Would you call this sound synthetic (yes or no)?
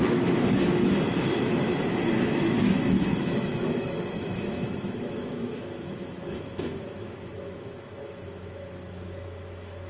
yes